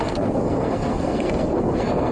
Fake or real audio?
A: fake